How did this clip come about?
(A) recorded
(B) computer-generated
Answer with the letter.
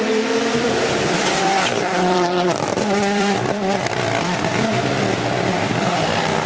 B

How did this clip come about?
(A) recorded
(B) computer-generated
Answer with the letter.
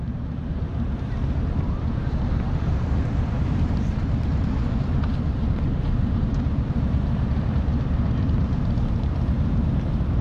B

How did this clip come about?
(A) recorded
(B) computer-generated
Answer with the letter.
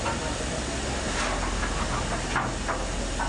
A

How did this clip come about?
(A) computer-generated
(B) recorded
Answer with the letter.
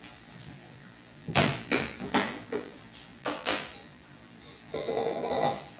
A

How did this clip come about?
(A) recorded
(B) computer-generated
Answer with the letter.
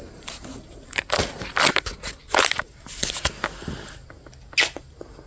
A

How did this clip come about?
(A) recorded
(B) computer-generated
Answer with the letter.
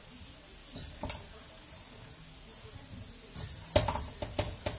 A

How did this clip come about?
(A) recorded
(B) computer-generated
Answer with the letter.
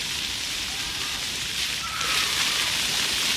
B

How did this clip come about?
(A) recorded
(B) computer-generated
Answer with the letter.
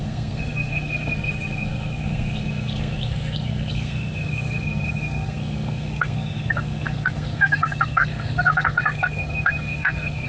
B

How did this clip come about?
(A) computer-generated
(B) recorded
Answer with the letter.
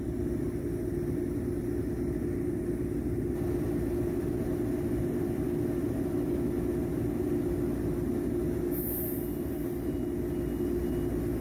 B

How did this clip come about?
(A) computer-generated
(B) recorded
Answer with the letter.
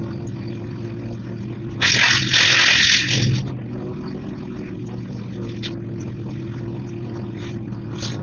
B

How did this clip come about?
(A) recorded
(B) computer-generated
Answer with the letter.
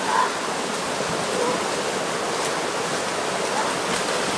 A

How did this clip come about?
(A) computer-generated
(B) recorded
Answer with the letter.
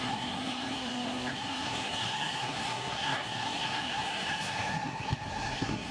A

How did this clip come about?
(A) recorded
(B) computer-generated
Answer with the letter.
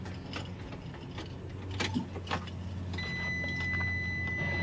A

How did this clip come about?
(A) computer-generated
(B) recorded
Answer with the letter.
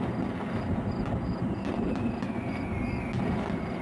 B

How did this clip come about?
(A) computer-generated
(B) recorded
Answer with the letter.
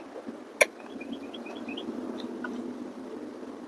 B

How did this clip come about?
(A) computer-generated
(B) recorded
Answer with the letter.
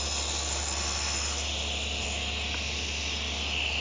B